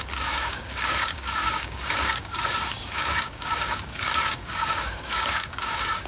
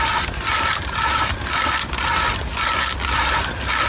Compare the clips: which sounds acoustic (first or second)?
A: second